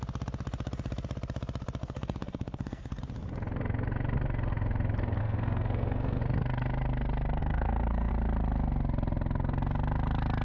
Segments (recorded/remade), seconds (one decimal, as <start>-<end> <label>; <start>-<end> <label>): 0.0-1.8 recorded; 1.8-3.0 remade; 3.0-5.2 recorded; 5.2-6.2 remade; 6.2-7.4 recorded; 7.4-8.1 remade; 8.1-10.4 recorded